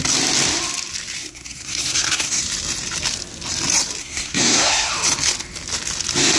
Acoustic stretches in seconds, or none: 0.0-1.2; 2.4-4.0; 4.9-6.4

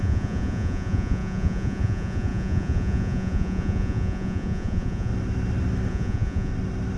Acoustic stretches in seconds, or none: 5.1-5.9; 6.5-7.0

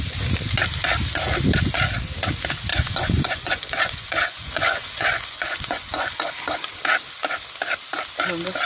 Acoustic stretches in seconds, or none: 0.0-2.7; 6.2-8.7